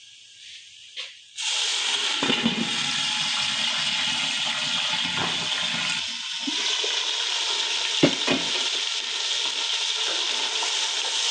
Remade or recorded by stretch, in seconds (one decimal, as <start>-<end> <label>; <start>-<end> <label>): 0.0-11.3 recorded